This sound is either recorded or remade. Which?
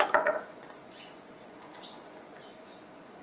remade